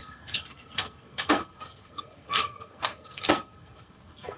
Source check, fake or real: fake